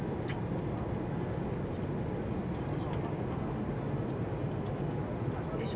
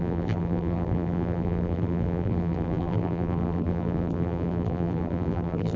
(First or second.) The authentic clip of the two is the first